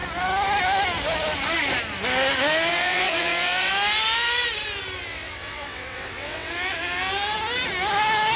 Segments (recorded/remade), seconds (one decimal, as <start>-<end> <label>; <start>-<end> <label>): 0.0-2.7 recorded; 2.7-3.7 remade; 3.7-5.1 recorded; 5.1-6.5 remade; 6.5-8.4 recorded